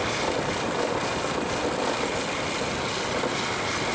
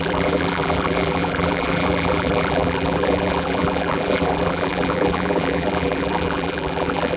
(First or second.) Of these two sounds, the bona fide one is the first